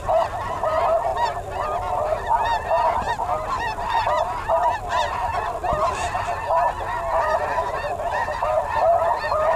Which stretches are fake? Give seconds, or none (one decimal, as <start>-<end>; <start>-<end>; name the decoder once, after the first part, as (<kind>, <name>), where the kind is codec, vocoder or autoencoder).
0.0-1.1 (vocoder, BigVGAN v2); 3.5-5.3; 8.2-9.6